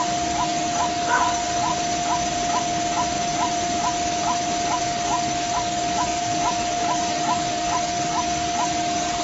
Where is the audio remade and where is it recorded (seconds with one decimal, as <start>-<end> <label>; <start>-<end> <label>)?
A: 0.0-1.7 remade; 1.7-4.8 recorded; 4.8-9.2 remade